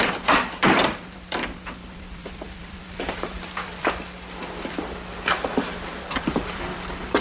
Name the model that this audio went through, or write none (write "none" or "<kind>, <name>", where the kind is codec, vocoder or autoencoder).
vocoder, BigVGAN v2